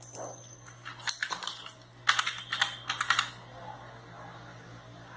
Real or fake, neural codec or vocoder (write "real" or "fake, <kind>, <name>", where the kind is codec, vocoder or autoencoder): real